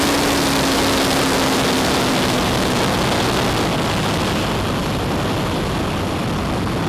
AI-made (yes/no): no